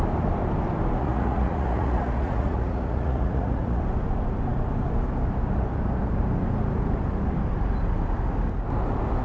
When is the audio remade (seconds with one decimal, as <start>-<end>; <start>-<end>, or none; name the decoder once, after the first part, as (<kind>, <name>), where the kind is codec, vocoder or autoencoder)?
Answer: 1.0-3.8 (vocoder, Vocos)